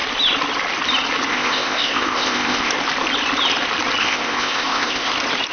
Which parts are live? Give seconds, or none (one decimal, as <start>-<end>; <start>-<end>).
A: 0.0-1.3; 2.7-4.0; 5.1-5.5